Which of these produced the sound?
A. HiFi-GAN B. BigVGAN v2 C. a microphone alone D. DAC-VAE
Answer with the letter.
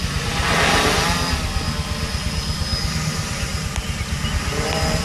C